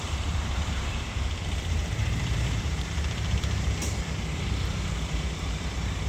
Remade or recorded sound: remade